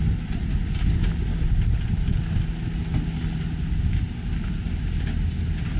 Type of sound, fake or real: real